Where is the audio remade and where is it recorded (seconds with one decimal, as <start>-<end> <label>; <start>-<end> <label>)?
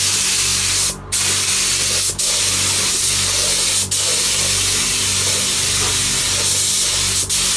0.0-7.6 recorded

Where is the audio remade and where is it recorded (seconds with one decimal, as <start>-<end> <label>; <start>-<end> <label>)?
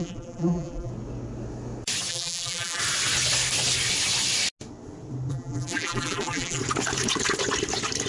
0.0-0.9 remade; 0.9-2.1 recorded; 2.1-2.8 remade; 2.8-5.3 recorded; 5.3-6.6 remade; 6.6-8.1 recorded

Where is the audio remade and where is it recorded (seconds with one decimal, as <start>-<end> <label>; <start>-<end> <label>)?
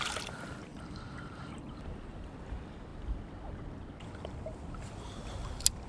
0.0-0.7 recorded; 0.7-1.6 remade; 1.6-5.9 recorded